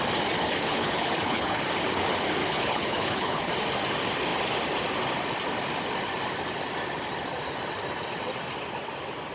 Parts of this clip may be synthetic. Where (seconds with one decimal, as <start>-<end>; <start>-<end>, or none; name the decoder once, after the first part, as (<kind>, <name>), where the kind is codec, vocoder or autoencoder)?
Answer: 0.4-1.6 (codec, HILCodec); 2.4-3.5